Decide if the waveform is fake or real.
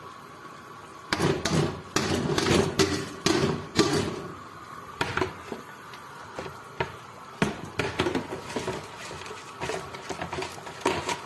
real